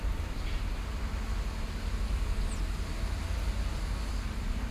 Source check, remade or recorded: recorded